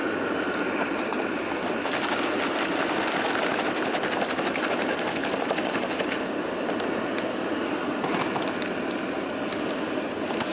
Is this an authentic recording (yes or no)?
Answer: yes